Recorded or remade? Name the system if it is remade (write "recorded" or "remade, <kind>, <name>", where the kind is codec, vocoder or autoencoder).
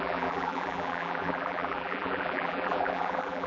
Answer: remade, vocoder, BigVGAN v2